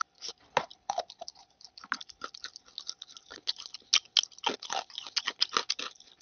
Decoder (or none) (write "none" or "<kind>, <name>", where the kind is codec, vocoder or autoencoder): none